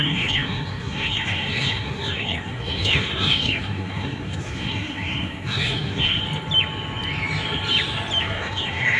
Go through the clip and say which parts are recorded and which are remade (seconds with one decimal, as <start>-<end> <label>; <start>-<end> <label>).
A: 0.0-6.2 remade; 6.2-8.2 recorded; 8.2-9.0 remade